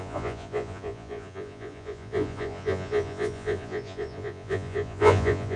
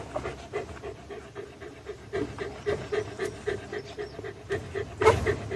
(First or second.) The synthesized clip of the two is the first